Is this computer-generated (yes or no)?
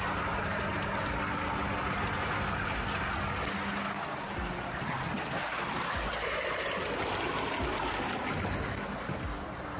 no